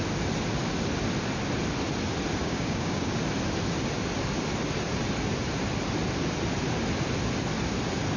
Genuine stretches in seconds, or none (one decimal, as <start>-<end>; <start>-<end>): 0.0-2.4; 3.2-8.2